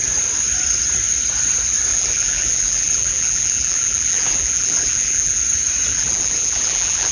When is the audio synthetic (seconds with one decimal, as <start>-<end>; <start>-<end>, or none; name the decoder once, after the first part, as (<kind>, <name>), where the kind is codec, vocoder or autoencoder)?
1.9-5.4 (vocoder, BigVGAN v2); 5.9-7.1